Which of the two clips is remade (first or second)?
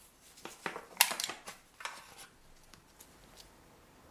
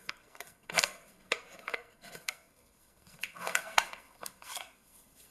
second